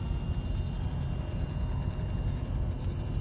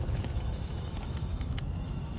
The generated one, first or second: second